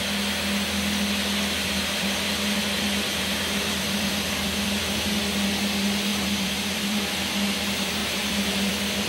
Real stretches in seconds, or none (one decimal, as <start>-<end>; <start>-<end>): 0.0-1.6; 5.2-6.1; 7.0-8.0; 8.7-9.1